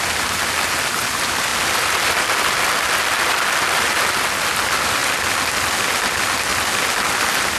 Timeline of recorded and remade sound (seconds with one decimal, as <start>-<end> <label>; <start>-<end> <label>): 0.0-7.6 recorded

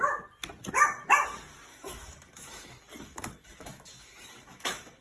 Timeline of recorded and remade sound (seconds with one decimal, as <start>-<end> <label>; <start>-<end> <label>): 0.0-1.7 recorded; 1.7-5.0 remade

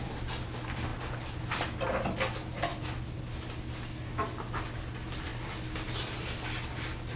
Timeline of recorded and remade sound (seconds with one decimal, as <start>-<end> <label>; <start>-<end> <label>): 0.0-7.2 recorded

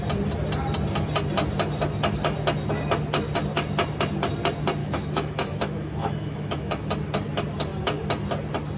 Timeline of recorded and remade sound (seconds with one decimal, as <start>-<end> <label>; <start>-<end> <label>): 0.0-4.8 recorded; 4.8-6.9 remade; 6.9-8.8 recorded

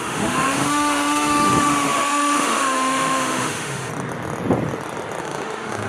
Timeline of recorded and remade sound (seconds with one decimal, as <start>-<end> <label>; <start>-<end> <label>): 0.0-3.9 remade; 3.9-5.2 recorded; 5.2-5.9 remade

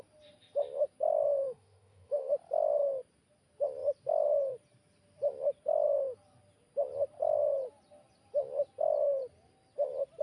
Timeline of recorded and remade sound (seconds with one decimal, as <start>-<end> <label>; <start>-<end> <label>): 0.0-1.4 recorded; 1.4-2.3 remade; 2.3-10.2 recorded

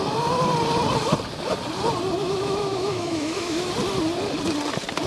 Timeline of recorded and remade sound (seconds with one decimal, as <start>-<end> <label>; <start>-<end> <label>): 0.0-2.2 recorded; 2.2-3.7 remade; 3.7-5.1 recorded